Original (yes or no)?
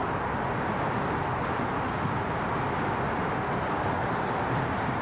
yes